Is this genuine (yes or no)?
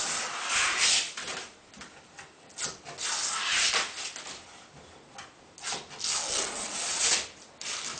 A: yes